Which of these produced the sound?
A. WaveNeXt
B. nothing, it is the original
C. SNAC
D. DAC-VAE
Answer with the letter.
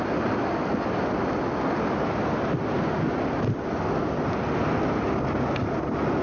B